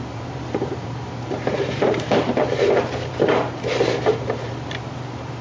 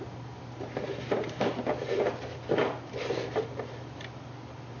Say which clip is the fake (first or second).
first